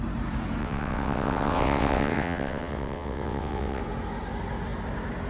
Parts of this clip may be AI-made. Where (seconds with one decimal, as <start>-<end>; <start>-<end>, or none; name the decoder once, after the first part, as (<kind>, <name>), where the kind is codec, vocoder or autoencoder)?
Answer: 0.6-3.8 (vocoder, WaveNeXt)